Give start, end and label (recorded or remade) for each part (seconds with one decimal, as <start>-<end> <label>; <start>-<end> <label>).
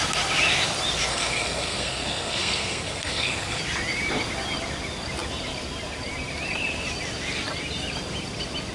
0.0-1.1 recorded; 1.1-3.6 remade; 3.6-8.7 recorded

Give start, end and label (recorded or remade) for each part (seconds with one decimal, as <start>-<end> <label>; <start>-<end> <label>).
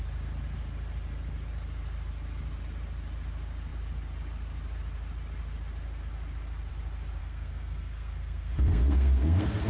0.0-7.2 recorded; 7.2-9.7 remade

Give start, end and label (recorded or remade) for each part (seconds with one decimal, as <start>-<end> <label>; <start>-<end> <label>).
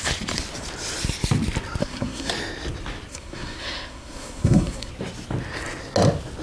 0.0-1.8 recorded; 1.8-2.3 remade; 2.3-3.1 recorded; 3.1-4.9 remade; 4.9-6.4 recorded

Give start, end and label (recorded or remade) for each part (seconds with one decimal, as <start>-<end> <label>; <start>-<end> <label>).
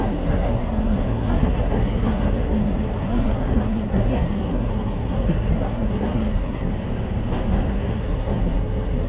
0.0-6.7 remade; 6.7-7.7 recorded; 7.7-9.1 remade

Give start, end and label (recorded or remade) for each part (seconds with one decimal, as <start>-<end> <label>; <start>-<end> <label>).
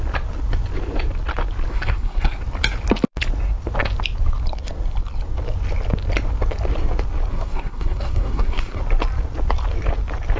0.0-1.7 recorded; 1.7-2.4 remade; 2.4-7.3 recorded; 7.3-8.8 remade; 8.8-10.4 recorded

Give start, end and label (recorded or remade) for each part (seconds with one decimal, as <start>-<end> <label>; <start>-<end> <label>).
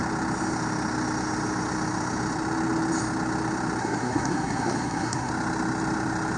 0.0-3.8 recorded; 3.8-5.3 remade; 5.3-6.4 recorded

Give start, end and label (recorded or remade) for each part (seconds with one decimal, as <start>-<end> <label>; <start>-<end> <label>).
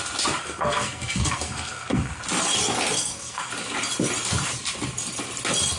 0.0-0.4 recorded; 0.4-2.2 remade; 2.2-3.0 recorded; 3.0-3.5 remade; 3.5-5.8 recorded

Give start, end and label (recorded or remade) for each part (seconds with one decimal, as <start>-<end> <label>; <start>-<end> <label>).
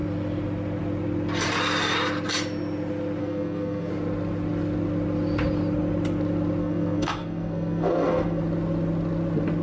0.0-3.2 recorded; 3.2-3.9 remade; 3.9-6.6 recorded; 6.6-8.4 remade; 8.4-9.6 recorded